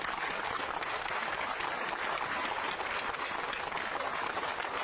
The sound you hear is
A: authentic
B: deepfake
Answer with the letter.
A